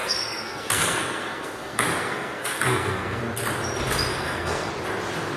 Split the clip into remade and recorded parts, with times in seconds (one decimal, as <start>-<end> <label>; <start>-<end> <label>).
0.0-3.2 remade; 3.2-4.1 recorded; 4.1-4.7 remade; 4.7-5.4 recorded